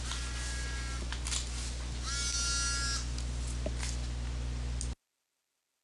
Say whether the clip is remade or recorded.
recorded